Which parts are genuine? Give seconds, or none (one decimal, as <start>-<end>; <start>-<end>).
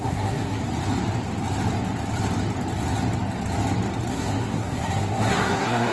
0.6-4.1